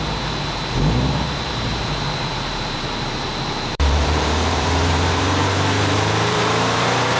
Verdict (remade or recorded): remade